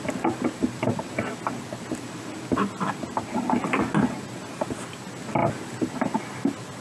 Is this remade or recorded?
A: recorded